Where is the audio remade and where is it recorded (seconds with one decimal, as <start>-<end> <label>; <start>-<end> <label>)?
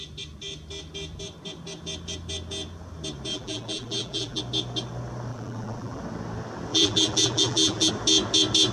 0.0-3.3 recorded; 3.3-4.4 remade; 4.4-5.3 recorded; 5.3-6.0 remade; 6.0-6.7 recorded; 6.7-7.9 remade; 7.9-8.7 recorded